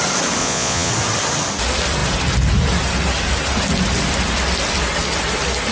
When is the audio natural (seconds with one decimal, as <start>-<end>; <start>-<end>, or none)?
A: 0.0-0.4; 0.9-5.7